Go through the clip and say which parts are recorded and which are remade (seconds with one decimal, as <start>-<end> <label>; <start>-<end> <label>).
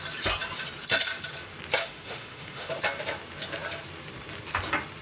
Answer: 0.0-1.8 recorded; 1.8-2.7 remade; 2.7-5.0 recorded